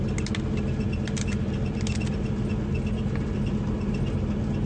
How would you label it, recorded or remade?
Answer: recorded